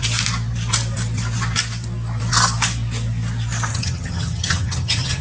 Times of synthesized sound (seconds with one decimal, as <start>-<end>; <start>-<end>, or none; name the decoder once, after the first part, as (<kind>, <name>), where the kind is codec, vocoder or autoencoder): 3.7-5.2 (vocoder, HiFi-GAN)